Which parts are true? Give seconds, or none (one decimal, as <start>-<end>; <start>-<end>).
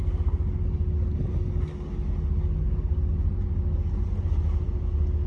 0.0-5.3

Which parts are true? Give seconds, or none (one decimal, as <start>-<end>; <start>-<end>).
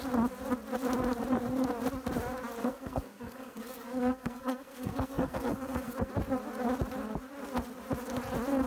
0.0-2.6; 6.1-8.7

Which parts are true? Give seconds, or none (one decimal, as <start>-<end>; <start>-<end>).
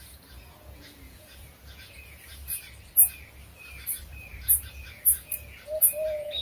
2.4-4.2